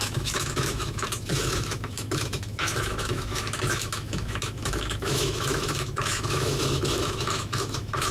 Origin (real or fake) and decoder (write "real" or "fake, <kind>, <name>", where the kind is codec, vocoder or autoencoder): fake, autoencoder, DAC-VAE